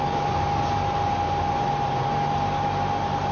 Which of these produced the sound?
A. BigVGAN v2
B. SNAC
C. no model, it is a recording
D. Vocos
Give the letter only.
C